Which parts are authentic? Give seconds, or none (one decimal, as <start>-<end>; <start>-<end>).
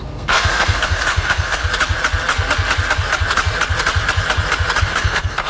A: 1.6-4.8